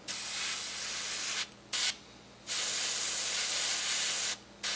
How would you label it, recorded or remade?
recorded